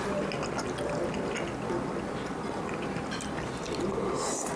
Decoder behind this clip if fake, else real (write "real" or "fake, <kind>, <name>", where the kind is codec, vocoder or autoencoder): real